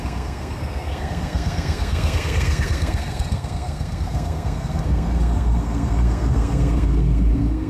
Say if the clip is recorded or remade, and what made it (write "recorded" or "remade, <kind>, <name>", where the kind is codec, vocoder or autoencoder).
remade, codec, SNAC